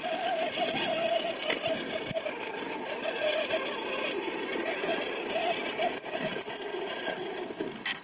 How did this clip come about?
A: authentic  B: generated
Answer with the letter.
A